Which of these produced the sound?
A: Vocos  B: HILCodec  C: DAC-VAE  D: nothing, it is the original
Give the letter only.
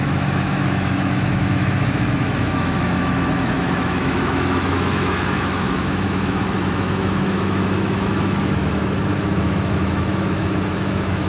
C